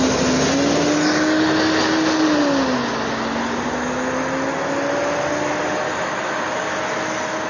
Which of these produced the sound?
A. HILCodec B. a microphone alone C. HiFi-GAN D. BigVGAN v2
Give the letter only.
B